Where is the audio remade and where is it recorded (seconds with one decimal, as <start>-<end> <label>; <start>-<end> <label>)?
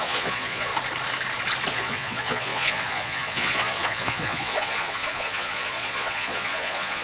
0.0-0.7 remade; 0.7-1.7 recorded; 1.7-7.0 remade